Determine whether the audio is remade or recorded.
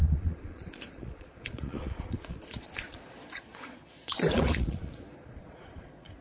remade